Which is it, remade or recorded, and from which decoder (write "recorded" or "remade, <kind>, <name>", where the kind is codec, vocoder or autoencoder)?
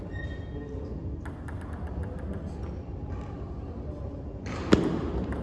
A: recorded